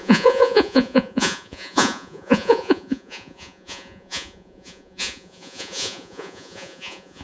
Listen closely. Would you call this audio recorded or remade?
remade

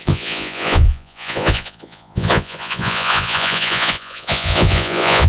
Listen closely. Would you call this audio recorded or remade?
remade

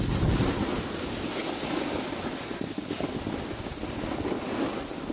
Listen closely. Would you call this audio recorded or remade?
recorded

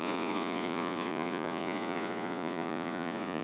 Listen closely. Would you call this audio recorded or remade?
remade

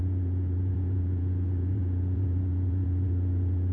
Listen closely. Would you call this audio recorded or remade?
remade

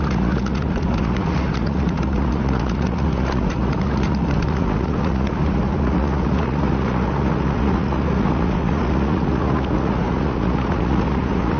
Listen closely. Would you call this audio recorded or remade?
remade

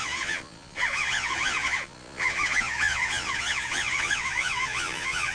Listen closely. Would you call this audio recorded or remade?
remade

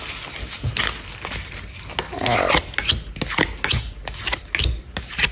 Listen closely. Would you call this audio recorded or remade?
recorded